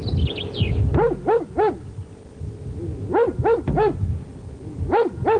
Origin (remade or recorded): recorded